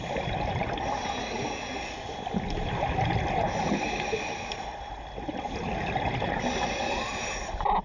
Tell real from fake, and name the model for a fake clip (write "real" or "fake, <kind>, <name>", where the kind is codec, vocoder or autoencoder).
real